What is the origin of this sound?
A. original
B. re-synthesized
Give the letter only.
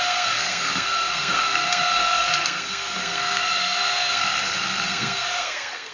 B